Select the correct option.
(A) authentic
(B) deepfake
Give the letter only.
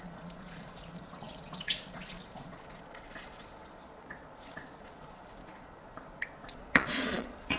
B